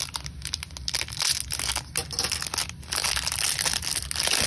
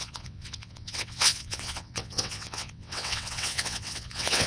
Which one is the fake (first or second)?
second